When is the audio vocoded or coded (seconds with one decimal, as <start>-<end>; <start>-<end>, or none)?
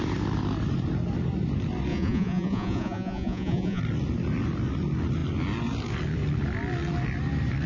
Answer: 1.9-3.8